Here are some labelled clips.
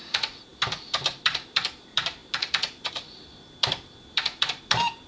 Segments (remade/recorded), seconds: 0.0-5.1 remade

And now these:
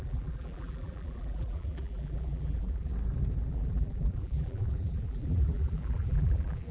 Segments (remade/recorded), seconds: 0.0-2.9 remade; 2.9-3.5 recorded; 3.5-6.7 remade

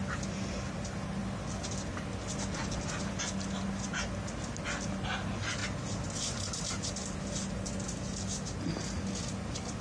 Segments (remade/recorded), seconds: 0.0-9.8 recorded

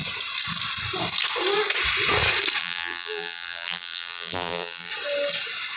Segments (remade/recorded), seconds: 0.0-2.6 recorded; 2.6-4.9 remade; 4.9-5.8 recorded